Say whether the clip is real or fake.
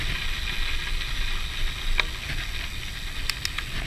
real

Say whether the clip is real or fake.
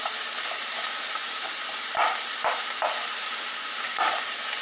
fake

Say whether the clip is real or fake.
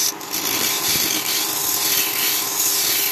real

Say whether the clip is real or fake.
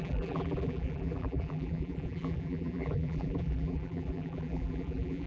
fake